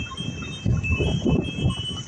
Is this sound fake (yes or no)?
yes